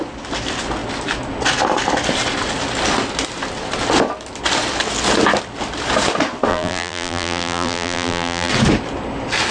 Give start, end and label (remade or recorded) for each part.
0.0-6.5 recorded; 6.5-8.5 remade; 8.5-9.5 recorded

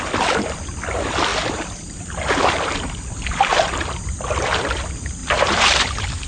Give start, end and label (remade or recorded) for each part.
0.0-1.3 recorded; 1.3-2.0 remade; 2.0-3.5 recorded; 3.5-4.0 remade; 4.0-5.2 recorded; 5.2-6.3 remade